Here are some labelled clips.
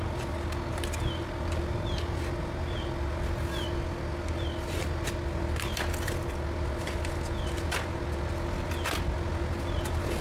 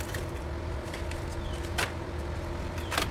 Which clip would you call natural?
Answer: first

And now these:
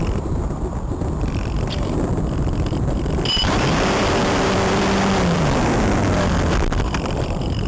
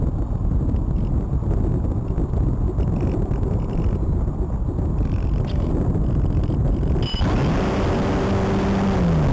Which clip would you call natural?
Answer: second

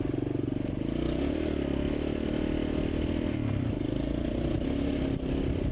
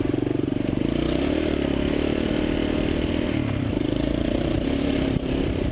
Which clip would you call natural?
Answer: first